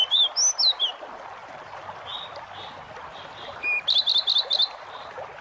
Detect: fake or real real